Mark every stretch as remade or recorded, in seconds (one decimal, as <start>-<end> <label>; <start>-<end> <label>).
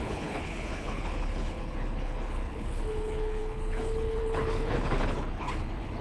0.0-6.0 remade